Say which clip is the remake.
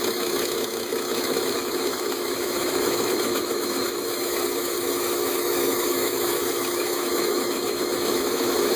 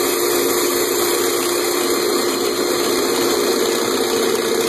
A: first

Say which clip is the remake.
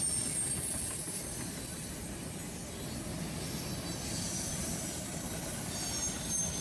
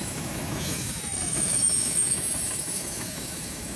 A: second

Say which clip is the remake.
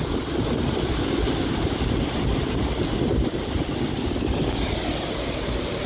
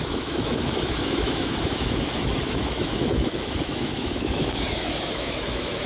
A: second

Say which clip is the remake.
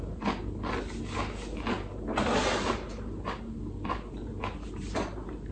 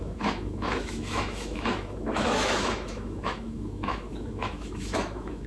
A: second